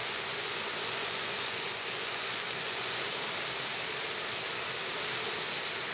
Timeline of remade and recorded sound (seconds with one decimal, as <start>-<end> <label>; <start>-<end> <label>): 0.0-3.0 remade; 3.0-5.9 recorded